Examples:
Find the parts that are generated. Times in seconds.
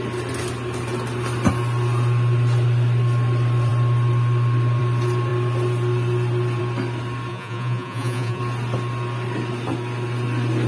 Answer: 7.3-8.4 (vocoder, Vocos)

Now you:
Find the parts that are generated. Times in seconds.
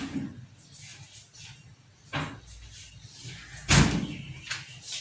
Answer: none